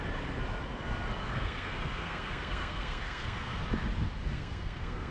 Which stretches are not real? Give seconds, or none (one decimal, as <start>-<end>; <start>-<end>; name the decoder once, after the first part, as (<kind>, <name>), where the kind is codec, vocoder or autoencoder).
1.2-3.6 (codec, SNAC); 4.2-5.1